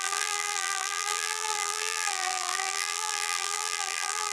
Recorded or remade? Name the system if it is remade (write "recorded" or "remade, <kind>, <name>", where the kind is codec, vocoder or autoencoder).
remade, vocoder, BigVGAN v2